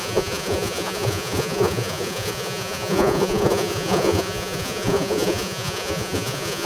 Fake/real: fake